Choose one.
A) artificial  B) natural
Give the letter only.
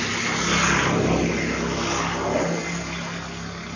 B